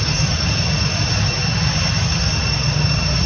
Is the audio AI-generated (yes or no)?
no